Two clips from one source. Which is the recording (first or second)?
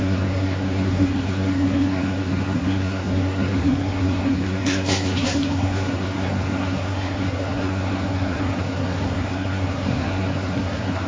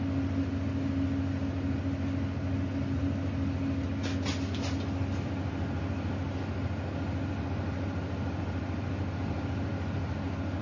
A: second